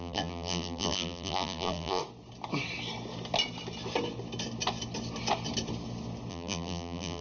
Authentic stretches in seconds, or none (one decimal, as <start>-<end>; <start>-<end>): 2.0-6.3